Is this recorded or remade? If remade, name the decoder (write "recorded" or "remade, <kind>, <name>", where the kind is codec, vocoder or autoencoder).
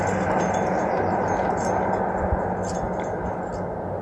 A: recorded